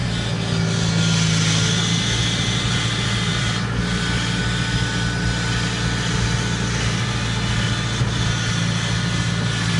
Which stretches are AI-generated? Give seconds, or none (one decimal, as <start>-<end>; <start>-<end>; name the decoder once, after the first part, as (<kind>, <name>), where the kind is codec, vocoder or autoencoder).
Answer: none